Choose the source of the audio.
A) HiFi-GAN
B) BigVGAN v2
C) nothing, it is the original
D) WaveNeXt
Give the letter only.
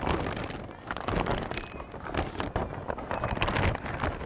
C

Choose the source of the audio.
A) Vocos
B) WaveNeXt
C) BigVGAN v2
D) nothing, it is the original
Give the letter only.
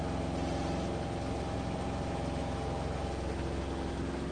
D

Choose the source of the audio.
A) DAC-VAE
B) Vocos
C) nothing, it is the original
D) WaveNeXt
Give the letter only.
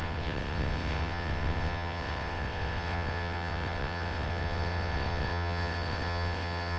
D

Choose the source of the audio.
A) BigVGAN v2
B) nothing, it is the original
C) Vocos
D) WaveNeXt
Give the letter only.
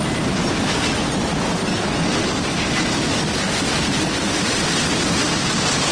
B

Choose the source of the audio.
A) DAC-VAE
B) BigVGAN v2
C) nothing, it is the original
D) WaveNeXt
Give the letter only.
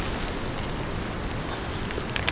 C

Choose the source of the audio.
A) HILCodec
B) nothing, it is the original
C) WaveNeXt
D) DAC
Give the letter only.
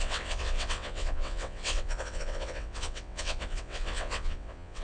C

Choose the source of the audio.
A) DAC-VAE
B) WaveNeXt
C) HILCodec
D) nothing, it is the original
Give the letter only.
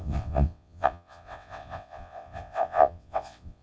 B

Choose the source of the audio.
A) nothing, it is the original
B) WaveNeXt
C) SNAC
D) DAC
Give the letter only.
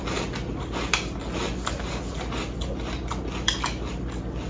A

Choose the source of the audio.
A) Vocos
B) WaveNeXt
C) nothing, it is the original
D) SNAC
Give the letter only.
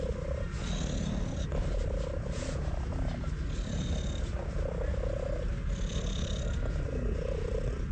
C